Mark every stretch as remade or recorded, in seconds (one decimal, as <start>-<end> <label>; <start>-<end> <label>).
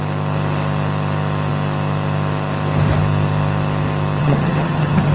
0.0-4.2 recorded; 4.2-5.1 remade